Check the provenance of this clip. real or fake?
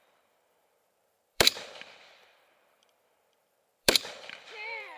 fake